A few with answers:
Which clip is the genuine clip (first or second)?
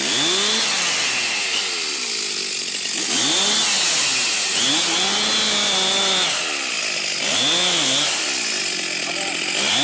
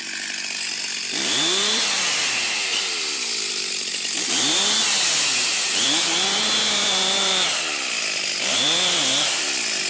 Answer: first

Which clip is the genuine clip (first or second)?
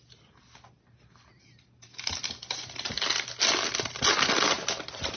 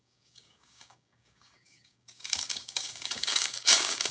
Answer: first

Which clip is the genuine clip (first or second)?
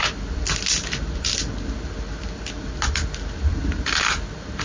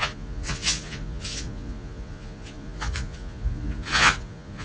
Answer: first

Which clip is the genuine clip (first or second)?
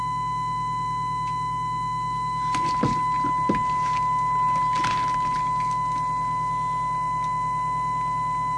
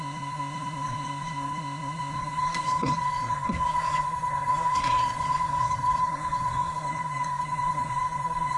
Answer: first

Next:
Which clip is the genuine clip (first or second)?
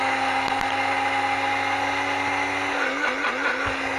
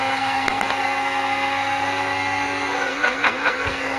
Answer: first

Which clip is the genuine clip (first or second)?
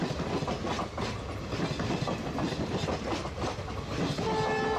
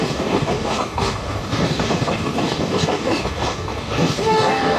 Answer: first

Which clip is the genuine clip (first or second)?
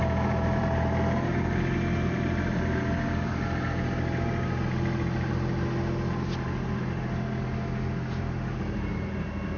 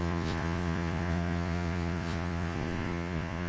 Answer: first